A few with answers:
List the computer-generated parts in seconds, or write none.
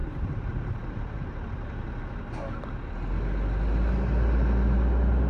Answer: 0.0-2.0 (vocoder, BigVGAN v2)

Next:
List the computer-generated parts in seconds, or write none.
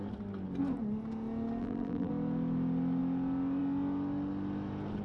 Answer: 1.6-2.1 (vocoder, BigVGAN v2)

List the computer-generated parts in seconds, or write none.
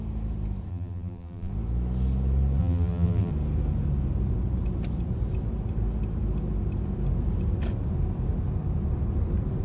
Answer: 0.7-1.5 (vocoder, BigVGAN v2); 2.6-3.3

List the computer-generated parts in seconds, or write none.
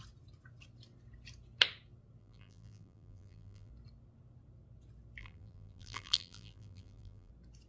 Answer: 2.2-3.7 (vocoder, BigVGAN v2); 5.2-7.3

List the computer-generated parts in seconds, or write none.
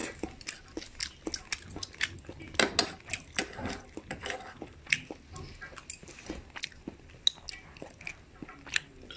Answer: none